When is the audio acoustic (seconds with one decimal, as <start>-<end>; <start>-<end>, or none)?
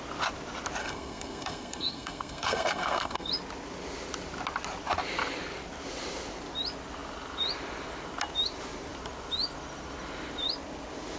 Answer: 0.0-0.8; 3.3-11.2